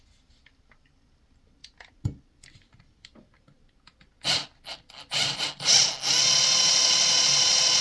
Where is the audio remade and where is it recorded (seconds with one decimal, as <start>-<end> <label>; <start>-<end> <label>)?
0.0-7.8 recorded